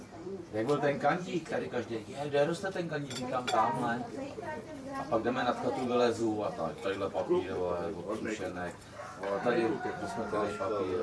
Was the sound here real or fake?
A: fake